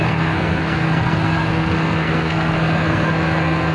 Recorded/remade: remade